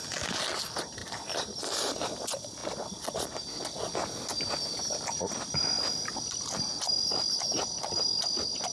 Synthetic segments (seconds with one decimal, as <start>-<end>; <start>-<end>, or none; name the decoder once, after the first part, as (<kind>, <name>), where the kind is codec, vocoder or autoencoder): none